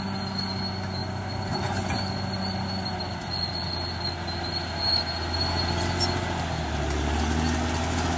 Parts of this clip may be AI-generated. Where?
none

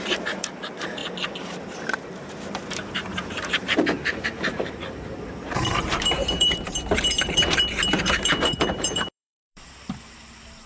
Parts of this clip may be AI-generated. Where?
0.0-1.0 (vocoder, BigVGAN v2); 2.2-10.7

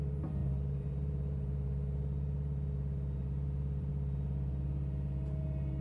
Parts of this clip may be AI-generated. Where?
0.0-5.8 (vocoder, BigVGAN v2)

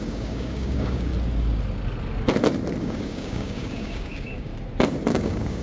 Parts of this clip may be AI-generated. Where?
0.0-1.1 (codec, DAC); 2.8-4.5; 5.1-5.6

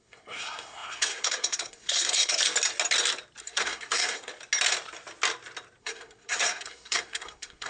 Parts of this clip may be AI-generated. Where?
0.0-2.4 (codec, SNAC); 3.4-4.3; 5.8-7.7

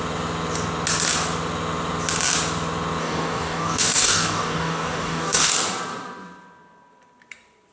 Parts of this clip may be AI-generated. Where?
3.0-5.5 (codec, DAC)